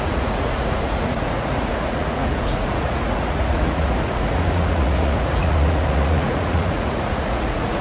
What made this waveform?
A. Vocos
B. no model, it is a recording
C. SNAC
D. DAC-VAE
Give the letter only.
A